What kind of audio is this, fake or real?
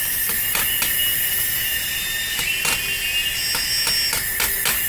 real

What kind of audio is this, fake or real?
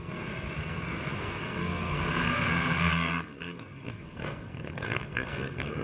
fake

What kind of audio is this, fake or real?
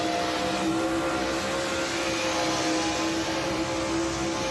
real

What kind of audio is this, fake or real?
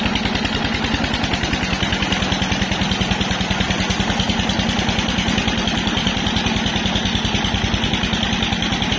real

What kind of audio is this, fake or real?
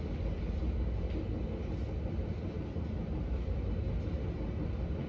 real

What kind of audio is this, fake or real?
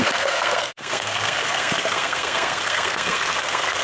fake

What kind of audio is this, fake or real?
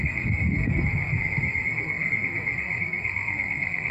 fake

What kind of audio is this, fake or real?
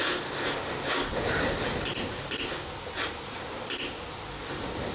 real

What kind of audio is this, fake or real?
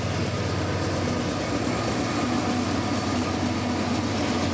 real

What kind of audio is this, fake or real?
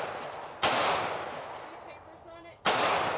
real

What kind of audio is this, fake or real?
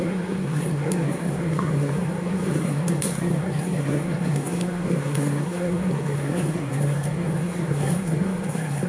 fake